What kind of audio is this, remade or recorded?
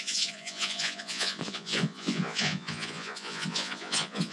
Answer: remade